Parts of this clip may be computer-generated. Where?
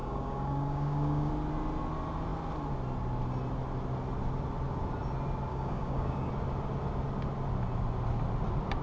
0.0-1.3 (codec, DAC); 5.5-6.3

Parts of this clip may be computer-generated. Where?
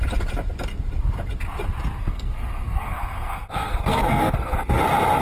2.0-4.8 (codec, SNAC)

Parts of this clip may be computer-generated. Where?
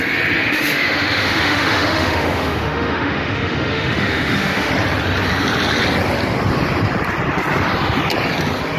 0.4-4.7 (autoencoder, DAC-VAE)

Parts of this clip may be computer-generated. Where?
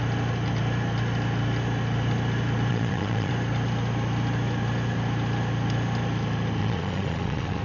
2.7-3.3 (vocoder, Vocos); 6.6-7.6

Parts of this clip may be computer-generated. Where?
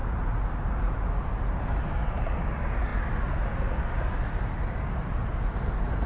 none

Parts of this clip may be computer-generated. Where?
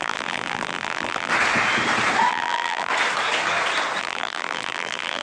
0.0-1.3 (vocoder, BigVGAN v2); 2.3-2.9; 4.0-5.2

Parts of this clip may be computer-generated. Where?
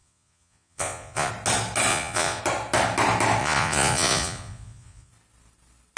0.0-1.3 (vocoder, Vocos); 1.9-2.4; 3.4-5.1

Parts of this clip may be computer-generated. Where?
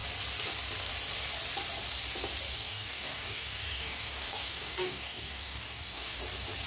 2.5-6.2 (codec, DAC)